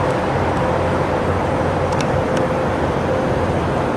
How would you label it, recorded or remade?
remade